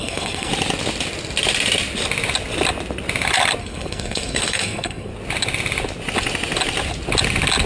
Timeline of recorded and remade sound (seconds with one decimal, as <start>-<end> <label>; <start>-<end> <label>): 0.0-0.5 remade; 0.5-3.6 recorded; 3.6-5.1 remade; 5.1-7.7 recorded